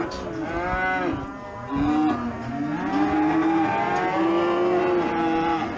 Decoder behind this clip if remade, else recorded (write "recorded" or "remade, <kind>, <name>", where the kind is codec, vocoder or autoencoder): recorded